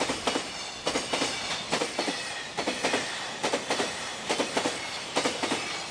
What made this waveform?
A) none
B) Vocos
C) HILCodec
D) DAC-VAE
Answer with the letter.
A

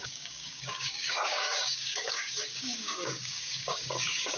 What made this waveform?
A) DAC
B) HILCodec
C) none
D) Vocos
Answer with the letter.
A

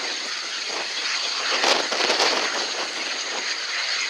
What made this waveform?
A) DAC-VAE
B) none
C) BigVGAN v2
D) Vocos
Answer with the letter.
B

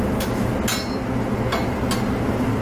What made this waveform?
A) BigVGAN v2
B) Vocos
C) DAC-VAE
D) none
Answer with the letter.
D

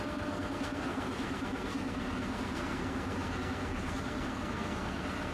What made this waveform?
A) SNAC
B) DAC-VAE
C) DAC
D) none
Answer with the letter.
A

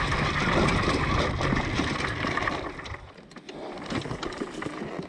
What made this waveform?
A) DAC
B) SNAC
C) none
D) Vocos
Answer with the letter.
C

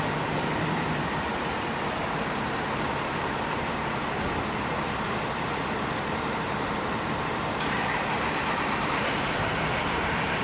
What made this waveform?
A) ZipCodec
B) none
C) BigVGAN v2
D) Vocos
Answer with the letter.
C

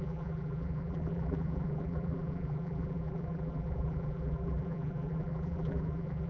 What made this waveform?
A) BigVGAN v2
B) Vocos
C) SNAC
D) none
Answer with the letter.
A